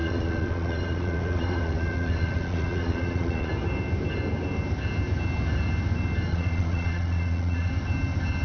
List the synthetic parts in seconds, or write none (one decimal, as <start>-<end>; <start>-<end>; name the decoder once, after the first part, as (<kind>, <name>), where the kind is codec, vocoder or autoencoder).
0.0-3.5 (vocoder, Vocos); 6.3-7.7